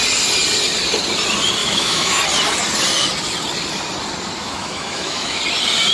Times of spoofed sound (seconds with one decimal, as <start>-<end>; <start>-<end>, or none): 1.6-2.2; 4.4-5.4